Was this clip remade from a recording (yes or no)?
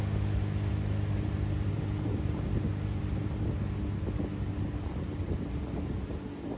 no